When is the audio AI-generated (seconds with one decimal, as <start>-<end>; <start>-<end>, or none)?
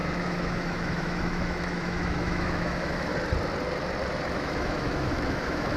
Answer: 0.0-3.1; 4.3-5.8